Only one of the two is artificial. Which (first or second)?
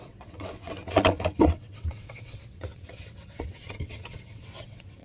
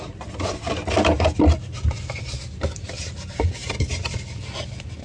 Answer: first